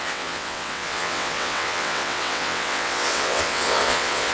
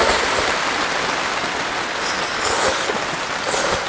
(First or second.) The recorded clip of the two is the second